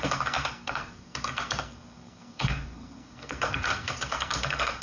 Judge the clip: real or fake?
fake